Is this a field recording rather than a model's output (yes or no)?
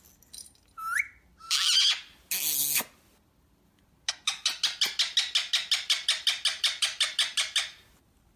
yes